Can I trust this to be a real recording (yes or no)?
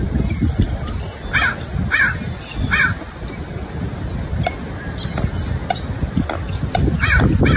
yes